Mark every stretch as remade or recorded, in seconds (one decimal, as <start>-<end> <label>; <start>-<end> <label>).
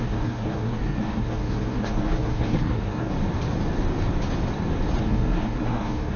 0.0-3.1 remade; 3.1-5.0 recorded; 5.0-6.2 remade